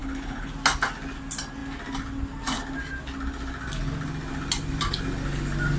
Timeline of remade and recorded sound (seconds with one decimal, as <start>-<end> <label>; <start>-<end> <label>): 0.0-0.5 remade; 0.5-5.8 recorded